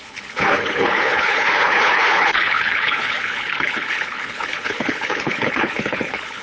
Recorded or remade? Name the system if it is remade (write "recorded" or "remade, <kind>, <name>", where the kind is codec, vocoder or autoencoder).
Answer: remade, codec, HILCodec